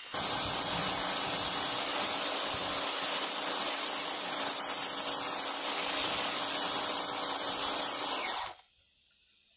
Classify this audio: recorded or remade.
recorded